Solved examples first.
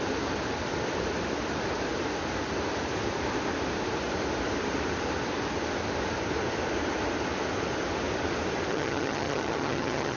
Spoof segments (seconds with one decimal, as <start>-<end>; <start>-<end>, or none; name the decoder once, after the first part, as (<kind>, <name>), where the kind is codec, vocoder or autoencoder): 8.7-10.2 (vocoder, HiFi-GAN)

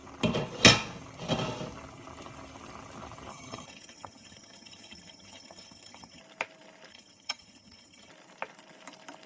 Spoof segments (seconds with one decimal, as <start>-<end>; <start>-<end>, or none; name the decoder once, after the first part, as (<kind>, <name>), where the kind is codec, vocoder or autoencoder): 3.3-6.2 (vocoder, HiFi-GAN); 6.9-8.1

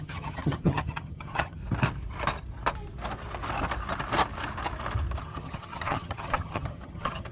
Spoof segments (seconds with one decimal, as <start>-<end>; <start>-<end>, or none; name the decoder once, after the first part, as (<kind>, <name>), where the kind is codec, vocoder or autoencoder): 0.0-1.6 (vocoder, HiFi-GAN); 5.2-7.3

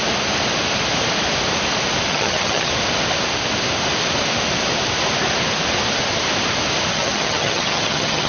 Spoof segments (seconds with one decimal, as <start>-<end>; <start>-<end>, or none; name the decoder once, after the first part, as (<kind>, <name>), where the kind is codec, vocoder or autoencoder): 2.1-2.7 (vocoder, HiFi-GAN); 6.9-8.3

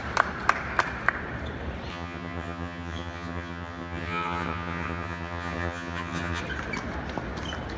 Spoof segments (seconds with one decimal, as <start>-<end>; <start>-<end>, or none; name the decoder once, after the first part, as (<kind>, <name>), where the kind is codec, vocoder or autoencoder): 1.9-6.4 (vocoder, HiFi-GAN)

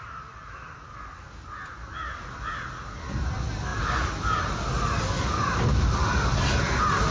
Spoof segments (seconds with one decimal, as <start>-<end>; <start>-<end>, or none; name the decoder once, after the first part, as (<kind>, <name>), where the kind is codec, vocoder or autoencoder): none